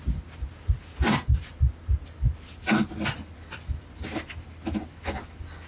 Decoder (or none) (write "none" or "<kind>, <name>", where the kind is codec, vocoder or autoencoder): none